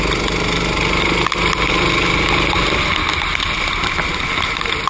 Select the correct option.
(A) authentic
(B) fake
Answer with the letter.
A